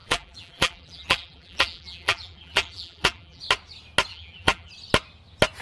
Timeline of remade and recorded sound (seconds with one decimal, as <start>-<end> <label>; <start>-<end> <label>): 0.0-3.4 remade; 3.4-4.1 recorded; 4.1-4.7 remade; 4.7-5.6 recorded